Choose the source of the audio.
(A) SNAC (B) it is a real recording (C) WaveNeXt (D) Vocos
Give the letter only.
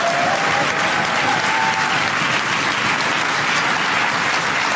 B